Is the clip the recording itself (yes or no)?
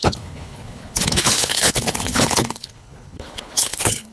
no